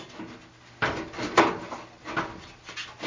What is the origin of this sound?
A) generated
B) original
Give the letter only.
B